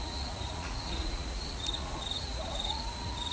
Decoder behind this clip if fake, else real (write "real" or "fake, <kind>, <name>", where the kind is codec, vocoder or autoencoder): fake, vocoder, Vocos